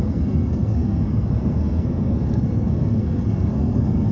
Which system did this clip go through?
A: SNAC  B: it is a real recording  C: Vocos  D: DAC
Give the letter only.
A